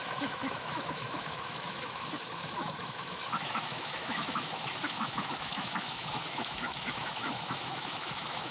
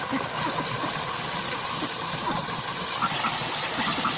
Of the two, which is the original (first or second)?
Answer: second